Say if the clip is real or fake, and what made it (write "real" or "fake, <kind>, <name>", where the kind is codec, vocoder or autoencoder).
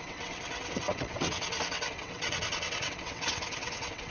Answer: fake, vocoder, WaveNeXt